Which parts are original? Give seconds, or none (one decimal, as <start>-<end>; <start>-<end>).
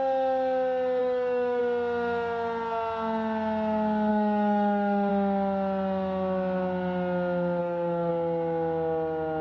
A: 0.0-1.0; 1.6-4.1; 5.1-7.6; 8.1-9.4